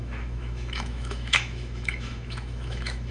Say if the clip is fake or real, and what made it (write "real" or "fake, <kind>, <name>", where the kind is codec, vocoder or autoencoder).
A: fake, autoencoder, DAC-VAE